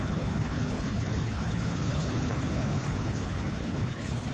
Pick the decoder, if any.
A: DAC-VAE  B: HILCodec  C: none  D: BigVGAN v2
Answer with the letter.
B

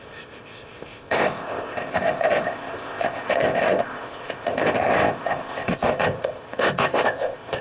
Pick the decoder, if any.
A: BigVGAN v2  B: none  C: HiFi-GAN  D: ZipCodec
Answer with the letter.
D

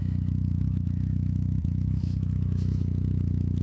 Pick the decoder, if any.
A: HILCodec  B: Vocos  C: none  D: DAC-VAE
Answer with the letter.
D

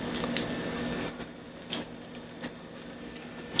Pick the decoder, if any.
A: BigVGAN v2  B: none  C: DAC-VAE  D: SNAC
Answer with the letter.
A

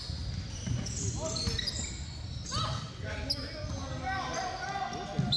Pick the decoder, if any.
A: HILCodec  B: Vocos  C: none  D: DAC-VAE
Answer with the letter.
C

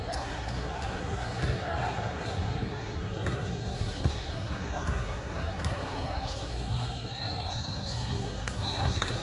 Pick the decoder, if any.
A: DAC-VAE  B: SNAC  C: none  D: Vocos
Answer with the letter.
B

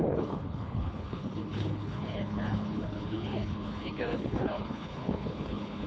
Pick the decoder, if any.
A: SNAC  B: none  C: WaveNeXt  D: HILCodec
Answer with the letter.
D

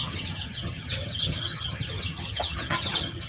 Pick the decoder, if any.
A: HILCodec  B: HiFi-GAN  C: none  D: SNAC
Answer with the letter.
B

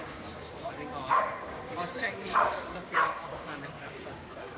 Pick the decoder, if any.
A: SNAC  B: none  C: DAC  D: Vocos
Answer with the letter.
C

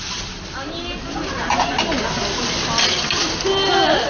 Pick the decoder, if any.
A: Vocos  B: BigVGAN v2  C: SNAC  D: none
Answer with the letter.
D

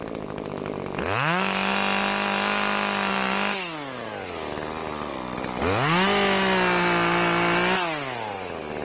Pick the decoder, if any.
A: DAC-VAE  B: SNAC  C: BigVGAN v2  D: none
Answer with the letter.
D